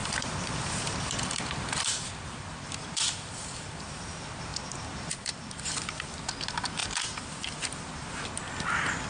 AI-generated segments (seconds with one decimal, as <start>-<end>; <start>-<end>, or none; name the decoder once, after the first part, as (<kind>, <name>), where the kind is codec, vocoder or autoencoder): 0.0-4.0 (vocoder, BigVGAN v2); 4.5-5.4; 6.8-7.7